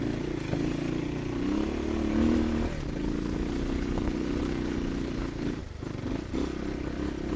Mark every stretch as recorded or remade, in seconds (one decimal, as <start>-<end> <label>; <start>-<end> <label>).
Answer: 0.0-7.4 recorded

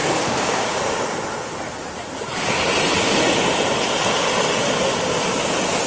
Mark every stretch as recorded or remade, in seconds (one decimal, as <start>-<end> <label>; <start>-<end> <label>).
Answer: 0.0-0.8 remade; 0.8-5.9 recorded